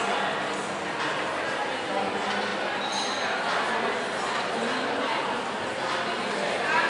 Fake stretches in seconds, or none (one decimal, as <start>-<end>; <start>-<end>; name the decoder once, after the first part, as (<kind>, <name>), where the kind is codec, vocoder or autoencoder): none